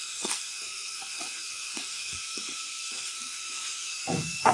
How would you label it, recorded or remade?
remade